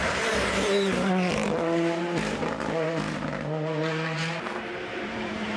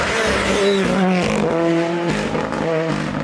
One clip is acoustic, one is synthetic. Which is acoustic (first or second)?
second